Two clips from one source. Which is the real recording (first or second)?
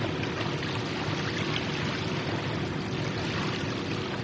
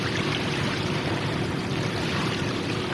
first